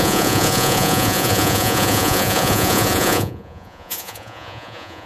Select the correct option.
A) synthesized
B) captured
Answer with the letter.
A